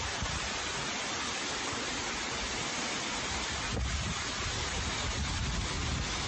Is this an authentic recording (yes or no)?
yes